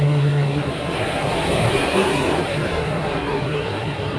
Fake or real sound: fake